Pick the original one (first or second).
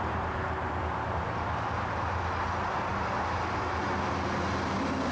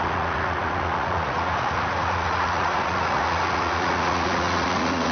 first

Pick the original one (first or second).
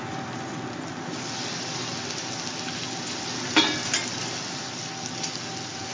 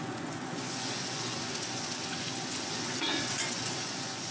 first